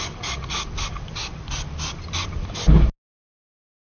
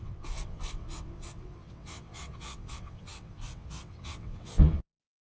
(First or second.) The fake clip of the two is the second